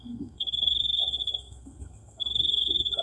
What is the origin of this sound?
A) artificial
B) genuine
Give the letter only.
A